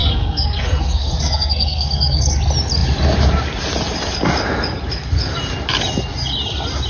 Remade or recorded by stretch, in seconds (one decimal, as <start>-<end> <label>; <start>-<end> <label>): 0.0-2.4 remade; 2.4-6.9 recorded